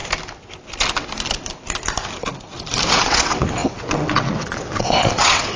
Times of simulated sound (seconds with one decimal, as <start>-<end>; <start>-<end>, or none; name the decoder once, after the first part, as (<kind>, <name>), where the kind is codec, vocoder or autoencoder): 2.8-5.6 (vocoder, WaveNeXt)